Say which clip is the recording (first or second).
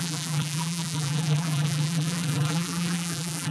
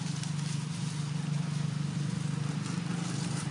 second